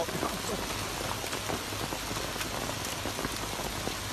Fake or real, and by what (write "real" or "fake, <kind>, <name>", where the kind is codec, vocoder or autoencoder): real